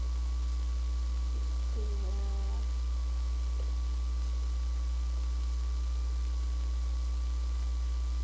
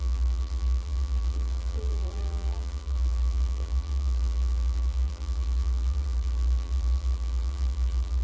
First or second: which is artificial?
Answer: second